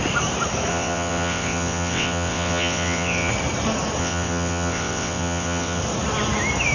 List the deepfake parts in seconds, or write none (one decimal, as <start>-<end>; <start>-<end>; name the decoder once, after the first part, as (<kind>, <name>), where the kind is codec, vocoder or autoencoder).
0.7-3.3 (vocoder, WaveNeXt); 4.0-5.8